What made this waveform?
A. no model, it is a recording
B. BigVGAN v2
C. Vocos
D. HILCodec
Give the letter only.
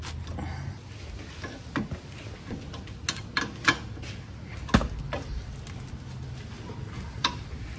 A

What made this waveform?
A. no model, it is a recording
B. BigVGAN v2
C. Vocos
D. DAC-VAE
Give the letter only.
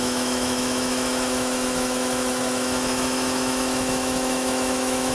D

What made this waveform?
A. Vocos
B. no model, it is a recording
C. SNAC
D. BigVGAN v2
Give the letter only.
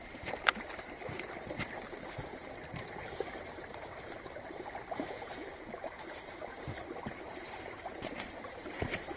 D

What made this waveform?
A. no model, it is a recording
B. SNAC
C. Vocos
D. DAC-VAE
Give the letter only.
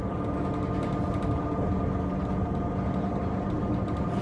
A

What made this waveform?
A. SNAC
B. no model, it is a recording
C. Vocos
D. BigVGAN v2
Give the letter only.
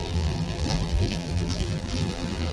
D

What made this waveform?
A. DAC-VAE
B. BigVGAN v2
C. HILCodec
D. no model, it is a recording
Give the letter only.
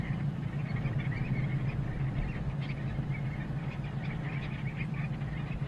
D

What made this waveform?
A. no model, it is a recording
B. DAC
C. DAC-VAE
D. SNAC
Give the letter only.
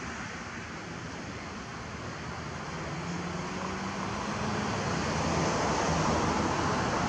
A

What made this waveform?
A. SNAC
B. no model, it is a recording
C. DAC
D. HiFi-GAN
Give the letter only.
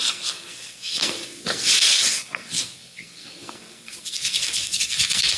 A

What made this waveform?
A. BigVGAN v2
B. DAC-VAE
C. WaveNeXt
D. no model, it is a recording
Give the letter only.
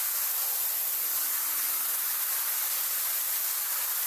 D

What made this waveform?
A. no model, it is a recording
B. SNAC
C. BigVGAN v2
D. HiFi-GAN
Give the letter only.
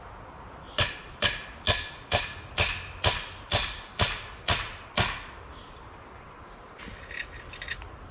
A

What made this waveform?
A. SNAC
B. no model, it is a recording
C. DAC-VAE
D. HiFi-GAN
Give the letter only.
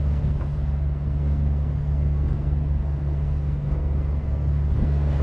A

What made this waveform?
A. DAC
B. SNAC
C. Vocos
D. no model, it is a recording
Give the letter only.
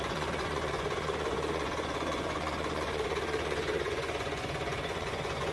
C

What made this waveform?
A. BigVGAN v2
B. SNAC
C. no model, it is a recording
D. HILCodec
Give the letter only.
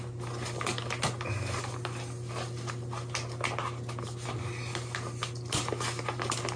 C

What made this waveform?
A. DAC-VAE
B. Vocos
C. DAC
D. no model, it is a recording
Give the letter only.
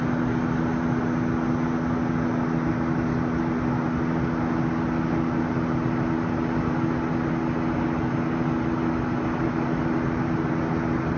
D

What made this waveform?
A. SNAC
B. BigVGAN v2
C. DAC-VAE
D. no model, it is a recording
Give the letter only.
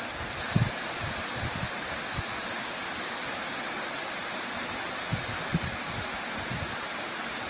D